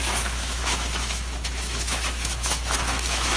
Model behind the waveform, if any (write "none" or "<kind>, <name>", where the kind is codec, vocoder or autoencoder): autoencoder, DAC-VAE